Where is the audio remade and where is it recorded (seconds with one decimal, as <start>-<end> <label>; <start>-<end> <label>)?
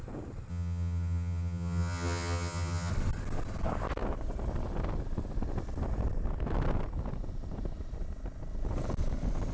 0.0-0.5 recorded; 0.5-2.9 remade; 2.9-9.5 recorded